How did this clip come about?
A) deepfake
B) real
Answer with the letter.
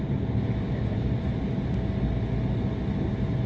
B